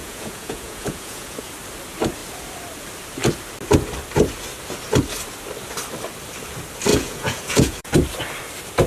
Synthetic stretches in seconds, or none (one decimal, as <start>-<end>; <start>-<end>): 0.0-1.5; 6.9-7.9